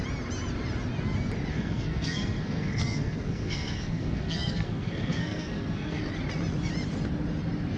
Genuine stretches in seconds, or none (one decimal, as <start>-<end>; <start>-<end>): 0.0-1.5; 6.0-7.8